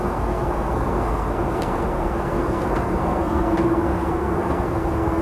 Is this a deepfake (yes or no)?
yes